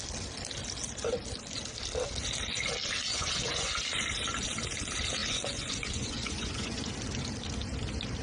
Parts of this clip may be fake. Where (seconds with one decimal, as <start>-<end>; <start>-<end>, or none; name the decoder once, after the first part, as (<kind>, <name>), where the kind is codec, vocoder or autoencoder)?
3.1-3.7 (vocoder, Vocos); 5.2-6.9